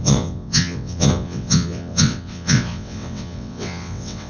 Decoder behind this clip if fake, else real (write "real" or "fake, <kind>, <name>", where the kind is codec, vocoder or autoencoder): fake, vocoder, WaveNeXt